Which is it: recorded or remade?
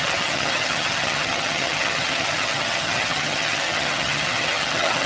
remade